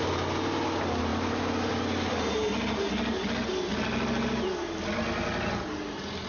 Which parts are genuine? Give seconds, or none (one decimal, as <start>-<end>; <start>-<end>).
0.0-6.3